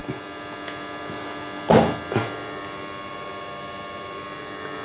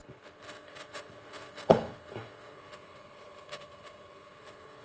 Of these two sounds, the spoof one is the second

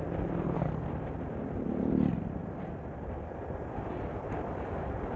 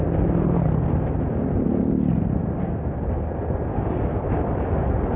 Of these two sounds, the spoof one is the first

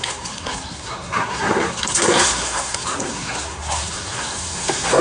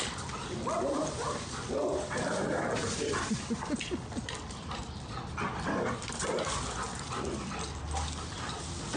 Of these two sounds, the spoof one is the first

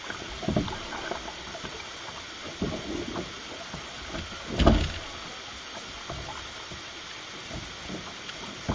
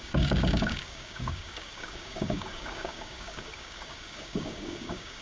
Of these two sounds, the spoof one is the second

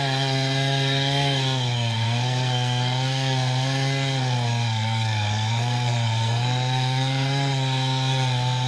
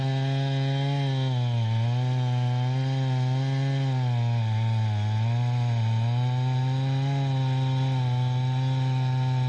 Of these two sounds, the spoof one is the first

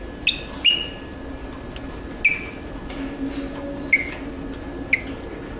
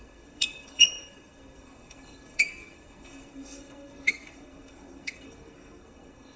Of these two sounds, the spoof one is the second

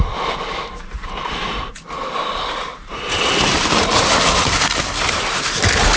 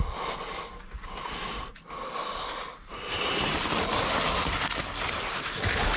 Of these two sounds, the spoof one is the first